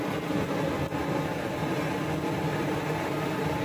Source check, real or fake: real